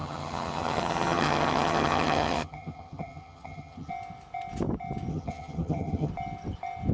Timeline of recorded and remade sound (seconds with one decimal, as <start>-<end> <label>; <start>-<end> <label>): 0.0-3.9 remade; 3.9-5.1 recorded; 5.1-6.1 remade; 6.1-6.9 recorded